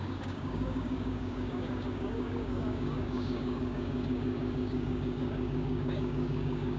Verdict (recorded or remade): remade